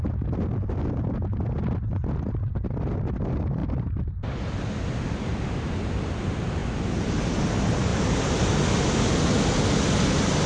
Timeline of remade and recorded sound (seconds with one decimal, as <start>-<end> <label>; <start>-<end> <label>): 0.0-10.5 recorded